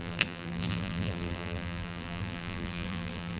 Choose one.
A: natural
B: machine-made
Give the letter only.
B